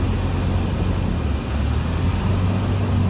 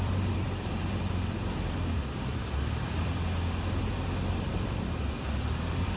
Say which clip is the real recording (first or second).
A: first